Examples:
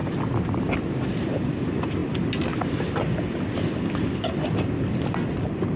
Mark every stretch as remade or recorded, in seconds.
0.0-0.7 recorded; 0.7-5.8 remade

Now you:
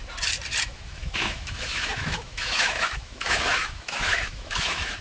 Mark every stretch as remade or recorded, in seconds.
0.0-0.6 recorded; 0.6-5.0 remade

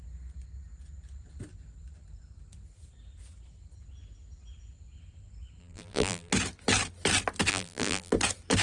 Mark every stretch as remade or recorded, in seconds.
0.0-5.6 recorded; 5.6-6.3 remade; 6.3-7.5 recorded; 7.5-8.1 remade; 8.1-8.6 recorded

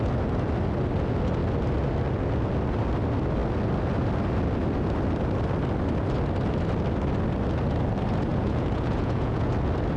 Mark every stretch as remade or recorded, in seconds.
0.0-8.3 recorded; 8.3-9.5 remade; 9.5-10.0 recorded